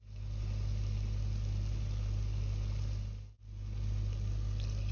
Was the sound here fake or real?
real